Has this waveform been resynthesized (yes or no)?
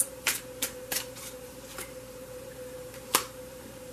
yes